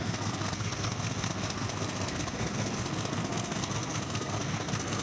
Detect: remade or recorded remade